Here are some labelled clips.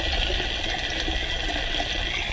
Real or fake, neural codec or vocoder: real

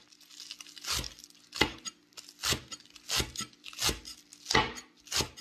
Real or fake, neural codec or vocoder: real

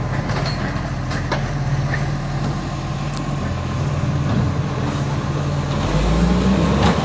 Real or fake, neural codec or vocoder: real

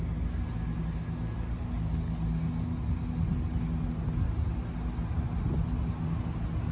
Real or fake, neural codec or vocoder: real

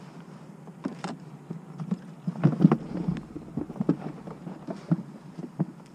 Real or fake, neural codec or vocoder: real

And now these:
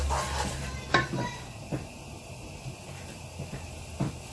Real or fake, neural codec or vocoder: real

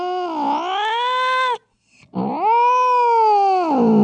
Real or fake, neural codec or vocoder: real